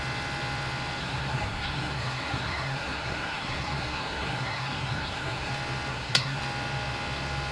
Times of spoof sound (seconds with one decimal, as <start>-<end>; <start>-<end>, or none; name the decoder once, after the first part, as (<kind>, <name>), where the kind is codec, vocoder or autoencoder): 1.0-5.5 (codec, SNAC); 5.9-6.4